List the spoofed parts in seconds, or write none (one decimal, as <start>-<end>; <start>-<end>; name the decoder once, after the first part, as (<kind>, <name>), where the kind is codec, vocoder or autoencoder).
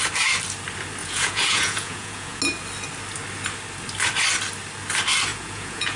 1.0-2.4 (vocoder, Vocos); 5.3-6.0